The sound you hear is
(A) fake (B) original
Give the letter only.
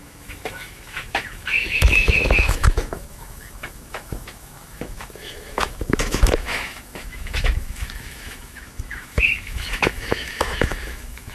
A